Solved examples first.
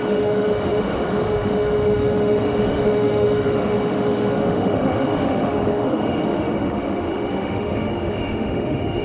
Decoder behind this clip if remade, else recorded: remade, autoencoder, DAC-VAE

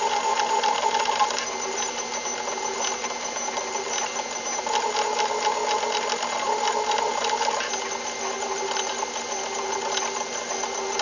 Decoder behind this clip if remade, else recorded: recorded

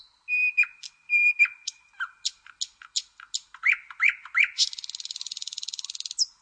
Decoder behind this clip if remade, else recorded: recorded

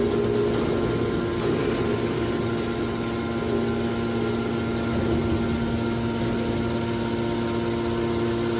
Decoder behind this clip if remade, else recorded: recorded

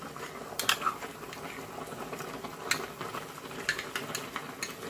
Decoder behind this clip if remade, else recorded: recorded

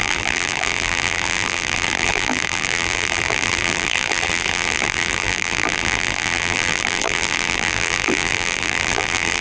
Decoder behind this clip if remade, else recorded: remade, vocoder, BigVGAN v2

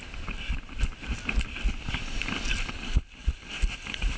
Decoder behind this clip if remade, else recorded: recorded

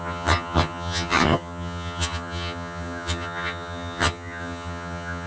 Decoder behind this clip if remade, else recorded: remade, vocoder, HiFi-GAN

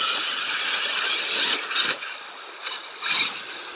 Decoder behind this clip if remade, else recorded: recorded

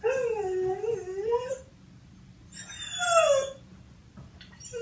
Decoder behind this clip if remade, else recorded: recorded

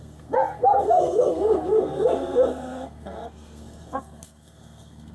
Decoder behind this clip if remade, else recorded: remade, codec, SNAC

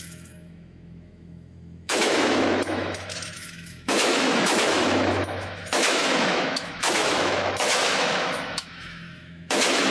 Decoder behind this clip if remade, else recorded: remade, autoencoder, DAC-VAE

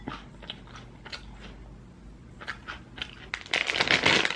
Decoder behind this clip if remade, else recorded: recorded